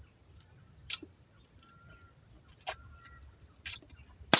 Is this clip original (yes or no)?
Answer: yes